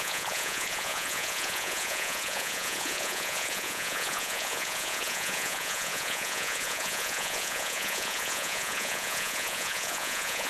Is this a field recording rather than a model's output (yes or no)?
no